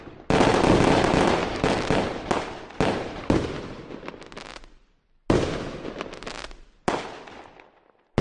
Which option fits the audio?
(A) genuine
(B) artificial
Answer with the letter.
A